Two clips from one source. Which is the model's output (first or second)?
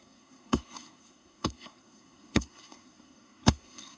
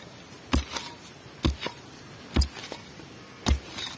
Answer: first